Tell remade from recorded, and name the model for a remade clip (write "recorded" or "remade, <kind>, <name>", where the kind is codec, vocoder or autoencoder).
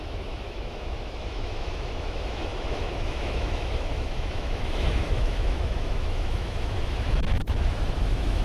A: remade, autoencoder, DAC-VAE